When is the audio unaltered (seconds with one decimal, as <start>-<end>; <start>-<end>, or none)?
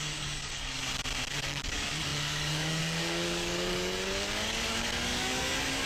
0.8-1.4